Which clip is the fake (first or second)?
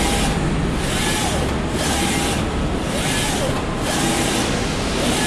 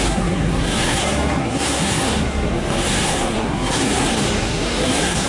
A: second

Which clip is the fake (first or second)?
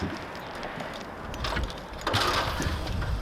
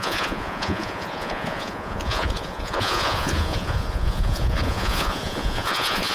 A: second